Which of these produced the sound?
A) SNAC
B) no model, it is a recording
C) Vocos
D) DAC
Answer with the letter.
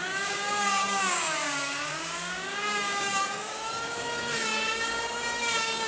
D